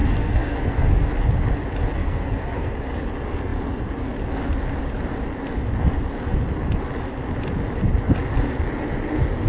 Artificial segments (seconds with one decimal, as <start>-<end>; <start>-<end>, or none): 0.0-1.1; 2.0-2.7